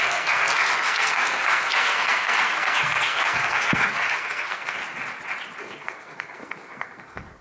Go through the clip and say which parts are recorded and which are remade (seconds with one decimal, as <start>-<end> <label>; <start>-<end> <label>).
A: 0.0-4.8 remade; 4.8-5.6 recorded; 5.6-7.4 remade